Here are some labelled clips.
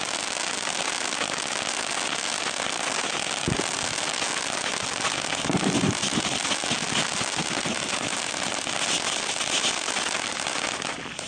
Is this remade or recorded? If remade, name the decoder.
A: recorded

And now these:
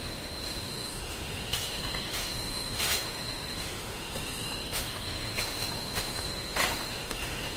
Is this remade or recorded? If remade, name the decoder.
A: remade, autoencoder, DAC-VAE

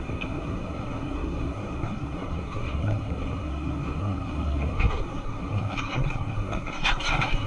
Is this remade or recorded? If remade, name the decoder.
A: remade, codec, SNAC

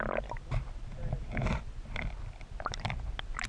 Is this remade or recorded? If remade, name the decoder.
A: recorded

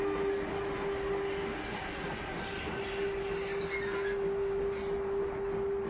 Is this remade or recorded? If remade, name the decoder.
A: recorded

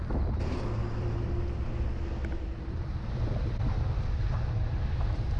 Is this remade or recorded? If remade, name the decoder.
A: remade, vocoder, BigVGAN v2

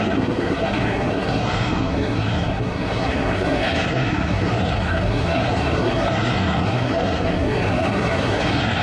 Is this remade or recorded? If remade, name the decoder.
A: remade, codec, SNAC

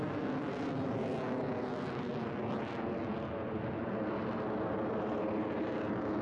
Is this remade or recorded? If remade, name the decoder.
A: recorded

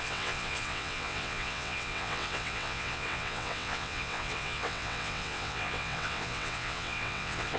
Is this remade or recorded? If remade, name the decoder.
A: remade, vocoder, WaveNeXt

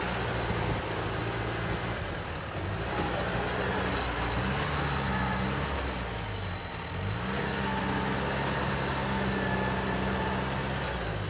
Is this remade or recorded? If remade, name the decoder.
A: recorded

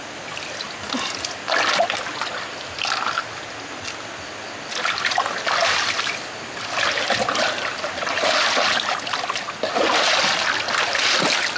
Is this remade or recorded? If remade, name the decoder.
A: recorded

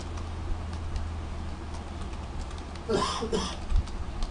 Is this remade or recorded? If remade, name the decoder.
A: recorded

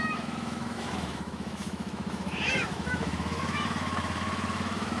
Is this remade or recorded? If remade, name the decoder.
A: remade, autoencoder, DAC-VAE